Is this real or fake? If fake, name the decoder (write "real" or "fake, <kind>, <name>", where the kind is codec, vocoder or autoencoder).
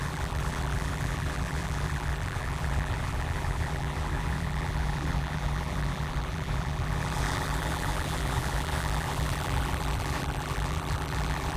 fake, vocoder, BigVGAN v2